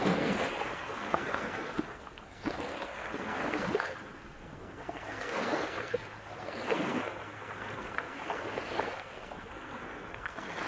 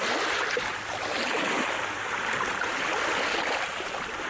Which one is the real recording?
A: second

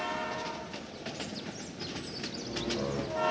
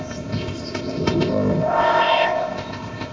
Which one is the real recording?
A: first